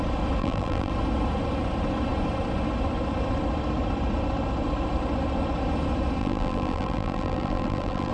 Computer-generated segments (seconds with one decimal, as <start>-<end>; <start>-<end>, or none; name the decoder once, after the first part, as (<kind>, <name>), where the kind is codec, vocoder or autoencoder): 0.4-0.9 (vocoder, BigVGAN v2); 6.2-8.1